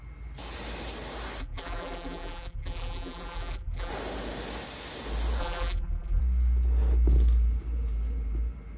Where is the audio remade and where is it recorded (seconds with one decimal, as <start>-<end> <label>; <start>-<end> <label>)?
0.0-1.4 recorded; 1.4-3.9 remade; 3.9-5.4 recorded; 5.4-6.2 remade; 6.2-8.8 recorded